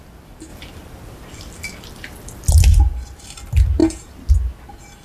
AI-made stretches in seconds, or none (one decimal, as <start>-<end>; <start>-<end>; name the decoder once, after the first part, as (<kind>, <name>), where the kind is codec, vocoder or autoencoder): 0.5-2.5 (vocoder, BigVGAN v2); 3.8-4.3